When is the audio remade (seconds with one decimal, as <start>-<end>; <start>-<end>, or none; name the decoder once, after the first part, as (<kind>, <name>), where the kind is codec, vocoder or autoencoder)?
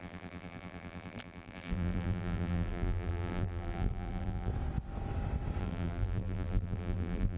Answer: 0.0-4.5 (vocoder, BigVGAN v2); 5.6-7.4